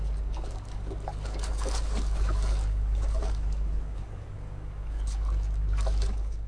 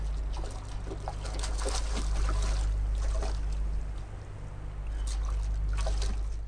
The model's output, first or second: first